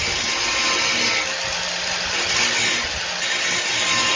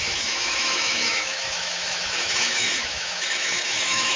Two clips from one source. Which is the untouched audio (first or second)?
first